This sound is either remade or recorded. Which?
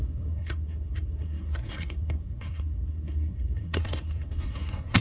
remade